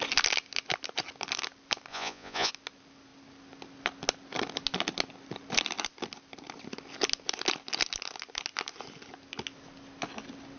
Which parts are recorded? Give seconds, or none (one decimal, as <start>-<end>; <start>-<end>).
0.0-1.9; 2.5-10.6